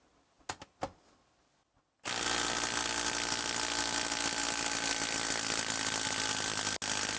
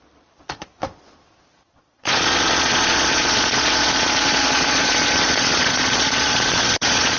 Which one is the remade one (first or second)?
second